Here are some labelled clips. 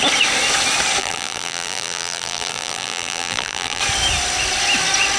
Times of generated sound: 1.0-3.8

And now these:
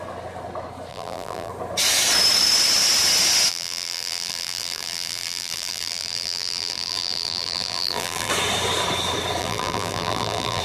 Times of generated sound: 0.9-1.5; 3.5-8.3; 9.4-10.6

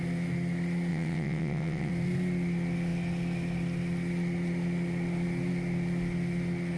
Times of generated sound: 0.9-1.9

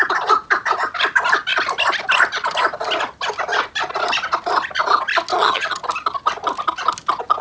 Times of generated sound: 5.3-5.8

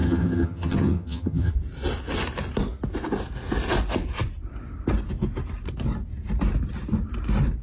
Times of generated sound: 0.0-1.5

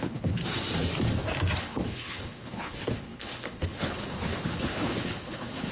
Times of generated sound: 0.0-0.4; 1.6-5.7

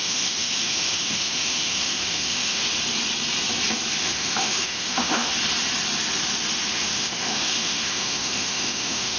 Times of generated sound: 0.0-2.6; 4.0-5.3; 6.7-9.2